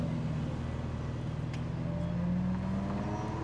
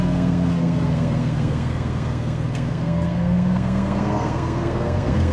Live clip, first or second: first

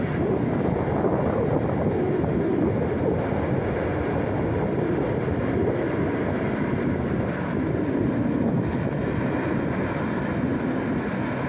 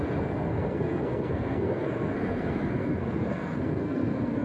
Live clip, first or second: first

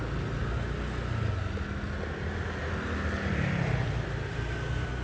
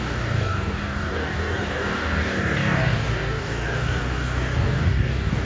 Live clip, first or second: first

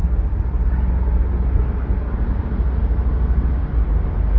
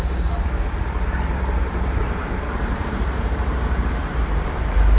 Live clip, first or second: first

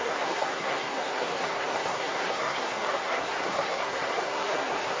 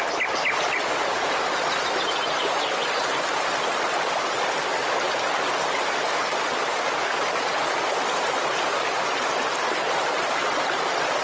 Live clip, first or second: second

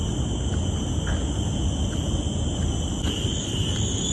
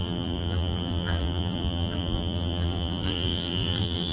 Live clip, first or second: first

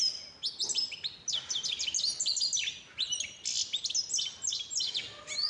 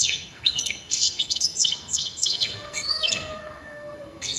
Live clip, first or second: first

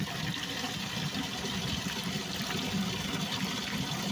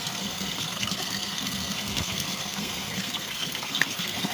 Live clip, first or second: first